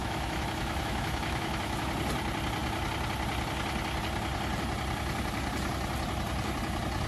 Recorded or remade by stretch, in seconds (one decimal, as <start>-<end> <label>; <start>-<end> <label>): 0.0-1.9 remade; 1.9-7.1 recorded